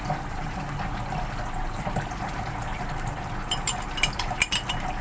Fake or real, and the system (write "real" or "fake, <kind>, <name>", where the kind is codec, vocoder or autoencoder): real